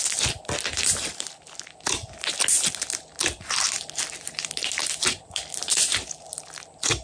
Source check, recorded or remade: recorded